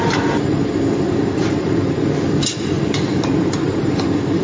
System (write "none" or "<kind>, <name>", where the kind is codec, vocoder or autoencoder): vocoder, BigVGAN v2